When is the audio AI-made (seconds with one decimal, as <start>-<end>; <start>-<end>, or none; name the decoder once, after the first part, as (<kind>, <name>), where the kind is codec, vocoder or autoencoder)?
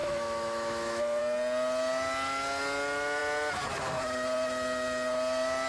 0.0-1.2 (autoencoder, DAC-VAE)